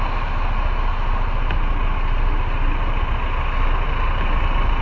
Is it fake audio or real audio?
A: real